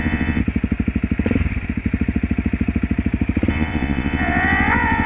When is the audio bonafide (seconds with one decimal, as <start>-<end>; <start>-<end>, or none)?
0.4-3.5